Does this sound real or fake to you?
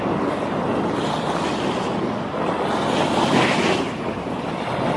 real